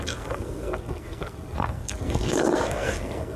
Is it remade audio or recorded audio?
remade